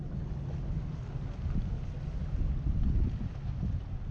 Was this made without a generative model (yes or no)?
yes